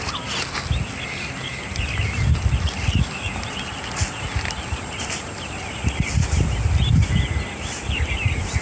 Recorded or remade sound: recorded